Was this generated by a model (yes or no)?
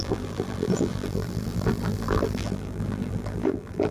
yes